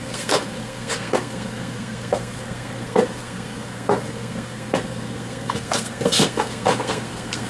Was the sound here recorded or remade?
remade